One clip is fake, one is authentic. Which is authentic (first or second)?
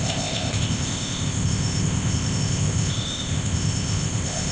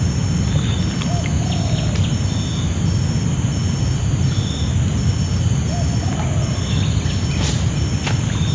second